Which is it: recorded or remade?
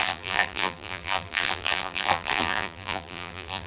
remade